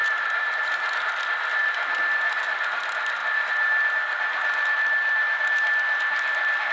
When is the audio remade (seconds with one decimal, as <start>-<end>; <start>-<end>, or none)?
0.0-1.1